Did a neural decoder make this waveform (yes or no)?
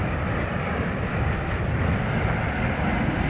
no